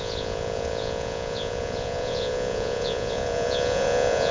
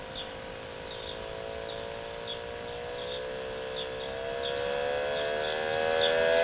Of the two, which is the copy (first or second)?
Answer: first